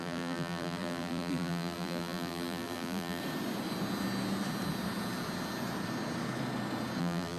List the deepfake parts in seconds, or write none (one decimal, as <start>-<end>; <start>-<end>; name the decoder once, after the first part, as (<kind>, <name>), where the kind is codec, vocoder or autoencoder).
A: 0.0-3.2 (vocoder, BigVGAN v2); 7.0-7.4